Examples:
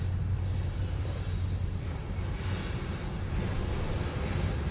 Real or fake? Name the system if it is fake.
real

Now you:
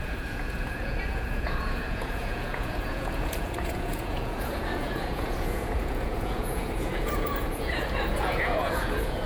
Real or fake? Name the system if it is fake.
fake, vocoder, Vocos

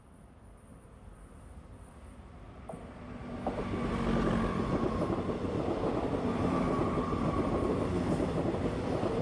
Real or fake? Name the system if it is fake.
real